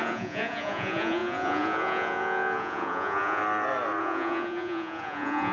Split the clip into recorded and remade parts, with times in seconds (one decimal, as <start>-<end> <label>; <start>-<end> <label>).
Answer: 0.0-3.4 remade; 3.4-4.0 recorded; 4.0-5.5 remade